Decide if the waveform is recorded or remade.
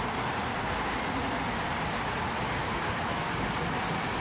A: recorded